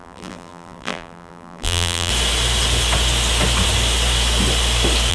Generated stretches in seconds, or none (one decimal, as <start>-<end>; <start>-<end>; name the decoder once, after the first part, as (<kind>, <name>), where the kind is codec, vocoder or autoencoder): 0.0-2.1 (vocoder, BigVGAN v2)